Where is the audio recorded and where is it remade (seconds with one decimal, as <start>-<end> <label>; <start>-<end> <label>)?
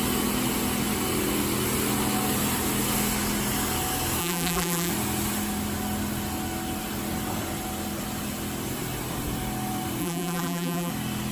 0.0-4.2 recorded; 4.2-4.9 remade; 4.9-10.0 recorded; 10.0-10.9 remade; 10.9-11.3 recorded